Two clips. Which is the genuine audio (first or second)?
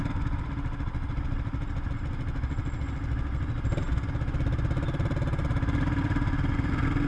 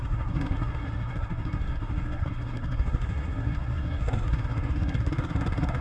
first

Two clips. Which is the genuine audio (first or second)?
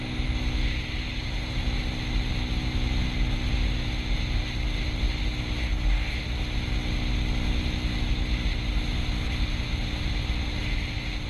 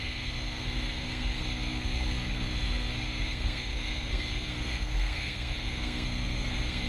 first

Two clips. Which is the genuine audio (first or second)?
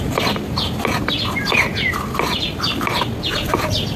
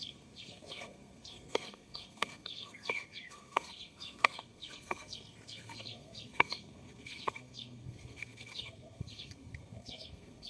first